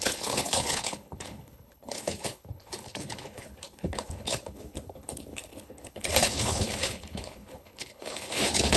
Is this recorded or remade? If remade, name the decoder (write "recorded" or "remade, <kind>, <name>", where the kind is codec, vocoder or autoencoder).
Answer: remade, codec, HILCodec